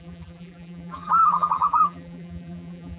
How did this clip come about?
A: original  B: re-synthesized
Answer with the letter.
B